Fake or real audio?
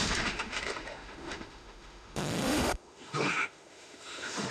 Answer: fake